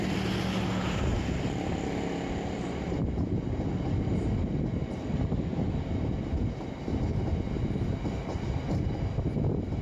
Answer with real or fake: real